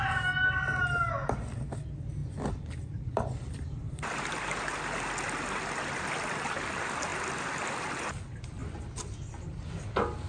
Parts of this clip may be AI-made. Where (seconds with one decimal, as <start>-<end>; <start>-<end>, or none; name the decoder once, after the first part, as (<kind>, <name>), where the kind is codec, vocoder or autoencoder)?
2.2-4.0 (vocoder, BigVGAN v2)